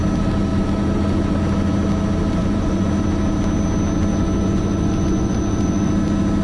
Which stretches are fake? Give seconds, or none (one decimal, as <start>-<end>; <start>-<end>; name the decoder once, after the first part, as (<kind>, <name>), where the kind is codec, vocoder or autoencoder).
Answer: 2.4-2.9 (vocoder, Vocos); 4.1-5.9